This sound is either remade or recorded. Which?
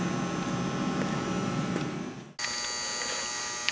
recorded